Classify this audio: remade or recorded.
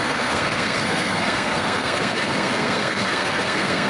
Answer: remade